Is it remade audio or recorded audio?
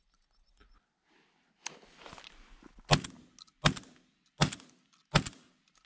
recorded